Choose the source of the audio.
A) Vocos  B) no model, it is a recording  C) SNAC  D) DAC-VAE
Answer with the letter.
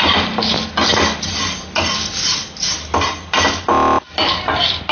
B